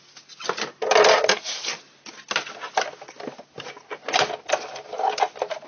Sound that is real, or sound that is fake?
real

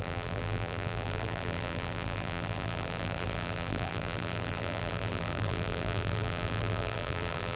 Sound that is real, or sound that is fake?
fake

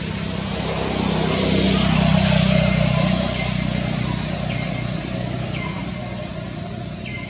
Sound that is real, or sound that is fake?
real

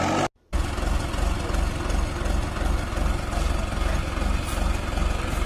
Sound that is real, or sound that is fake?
real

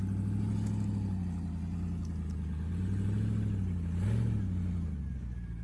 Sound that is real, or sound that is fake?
real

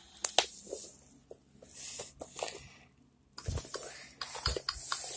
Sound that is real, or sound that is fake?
real